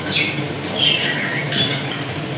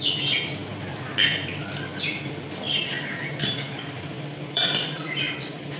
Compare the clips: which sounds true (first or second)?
first